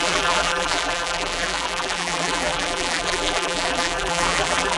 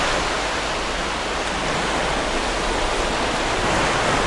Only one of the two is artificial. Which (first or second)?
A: first